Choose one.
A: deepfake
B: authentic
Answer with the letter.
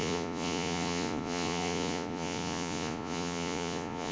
A